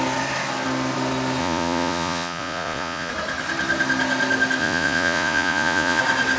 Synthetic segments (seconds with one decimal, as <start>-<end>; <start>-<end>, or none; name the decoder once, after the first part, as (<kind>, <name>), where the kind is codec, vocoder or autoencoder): 1.4-3.1 (vocoder, Vocos); 4.6-6.0